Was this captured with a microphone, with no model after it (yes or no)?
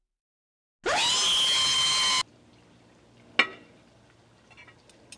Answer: yes